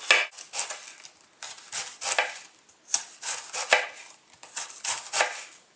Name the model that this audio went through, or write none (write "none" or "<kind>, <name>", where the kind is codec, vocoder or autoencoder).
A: none